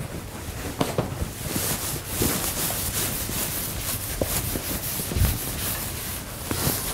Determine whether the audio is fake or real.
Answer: real